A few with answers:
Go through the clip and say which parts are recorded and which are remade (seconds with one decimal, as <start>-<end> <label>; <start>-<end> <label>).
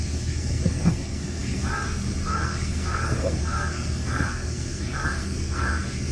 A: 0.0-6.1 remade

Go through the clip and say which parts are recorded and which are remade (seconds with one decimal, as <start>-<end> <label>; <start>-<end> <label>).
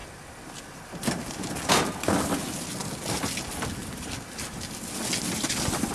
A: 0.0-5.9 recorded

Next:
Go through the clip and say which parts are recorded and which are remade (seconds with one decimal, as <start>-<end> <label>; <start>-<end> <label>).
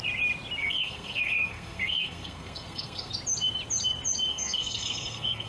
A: 0.0-0.6 recorded; 0.6-3.1 remade; 3.1-4.3 recorded; 4.3-5.5 remade